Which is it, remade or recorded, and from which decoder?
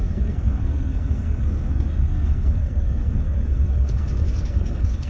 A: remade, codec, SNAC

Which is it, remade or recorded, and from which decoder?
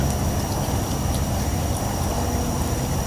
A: recorded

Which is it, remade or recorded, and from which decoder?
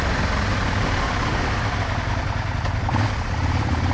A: remade, vocoder, BigVGAN v2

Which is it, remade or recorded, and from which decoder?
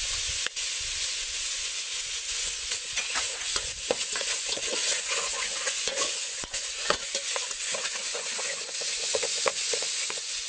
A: remade, vocoder, Vocos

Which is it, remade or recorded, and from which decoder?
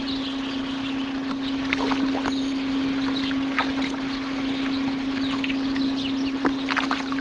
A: recorded